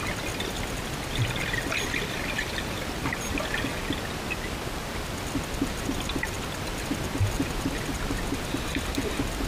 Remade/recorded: recorded